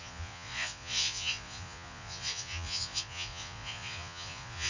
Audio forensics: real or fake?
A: fake